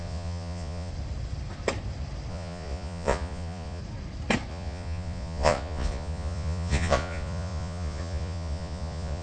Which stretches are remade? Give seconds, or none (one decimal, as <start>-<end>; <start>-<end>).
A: 0.0-0.9; 2.3-3.8; 4.5-9.2